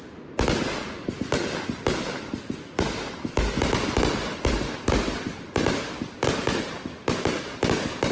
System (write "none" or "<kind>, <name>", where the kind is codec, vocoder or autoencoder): none